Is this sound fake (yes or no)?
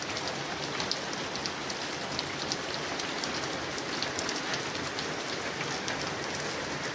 no